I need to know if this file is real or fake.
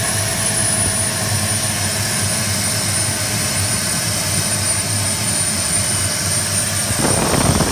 real